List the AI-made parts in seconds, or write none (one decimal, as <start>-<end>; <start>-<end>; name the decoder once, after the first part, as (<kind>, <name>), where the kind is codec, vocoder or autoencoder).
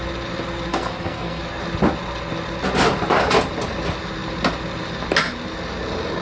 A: 0.7-1.4 (codec, SNAC)